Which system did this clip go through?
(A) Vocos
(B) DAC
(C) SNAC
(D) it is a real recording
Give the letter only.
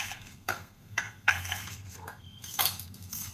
C